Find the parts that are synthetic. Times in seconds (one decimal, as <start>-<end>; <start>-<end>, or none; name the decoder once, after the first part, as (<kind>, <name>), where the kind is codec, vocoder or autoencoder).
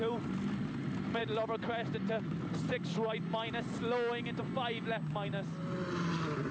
none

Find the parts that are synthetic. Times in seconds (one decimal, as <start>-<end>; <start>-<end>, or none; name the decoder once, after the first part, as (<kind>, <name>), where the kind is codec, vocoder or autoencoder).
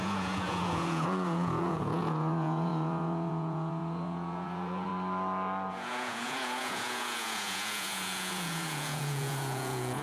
0.0-4.9 (vocoder, Vocos); 5.7-10.0